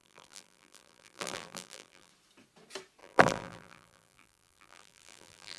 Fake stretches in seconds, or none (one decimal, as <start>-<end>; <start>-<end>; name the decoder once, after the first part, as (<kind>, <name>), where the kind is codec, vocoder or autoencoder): 0.0-2.1 (vocoder, BigVGAN v2); 3.0-5.6